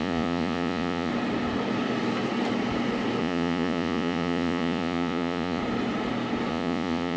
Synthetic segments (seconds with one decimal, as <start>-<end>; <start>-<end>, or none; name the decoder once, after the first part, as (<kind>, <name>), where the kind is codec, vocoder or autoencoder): 0.0-1.1 (vocoder, Vocos); 3.2-5.6; 6.5-7.2